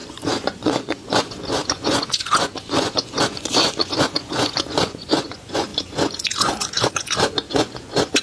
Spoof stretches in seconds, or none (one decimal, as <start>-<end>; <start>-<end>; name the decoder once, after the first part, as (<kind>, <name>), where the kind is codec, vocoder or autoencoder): 0.0-8.2 (vocoder, Vocos)